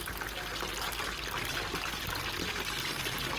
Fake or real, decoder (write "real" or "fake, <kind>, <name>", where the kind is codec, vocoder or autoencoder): real